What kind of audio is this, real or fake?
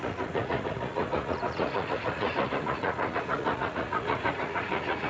fake